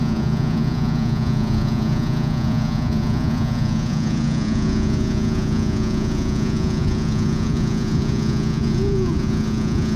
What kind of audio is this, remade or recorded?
remade